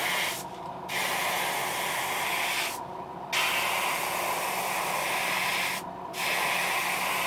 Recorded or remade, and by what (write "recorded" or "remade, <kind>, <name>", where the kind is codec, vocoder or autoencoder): recorded